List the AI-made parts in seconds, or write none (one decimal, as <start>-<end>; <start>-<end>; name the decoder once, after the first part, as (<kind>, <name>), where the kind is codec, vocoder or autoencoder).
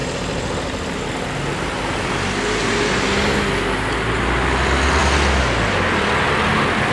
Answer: none